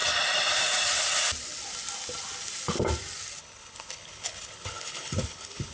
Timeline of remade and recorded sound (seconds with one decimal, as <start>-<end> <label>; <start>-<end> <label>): 0.0-3.4 recorded; 3.4-5.7 remade